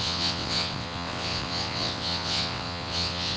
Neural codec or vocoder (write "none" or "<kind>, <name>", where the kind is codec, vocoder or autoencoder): vocoder, WaveNeXt